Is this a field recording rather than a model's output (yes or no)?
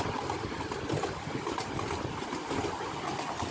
yes